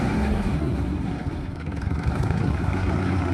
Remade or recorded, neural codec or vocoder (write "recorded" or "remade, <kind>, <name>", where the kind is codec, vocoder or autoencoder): remade, codec, SNAC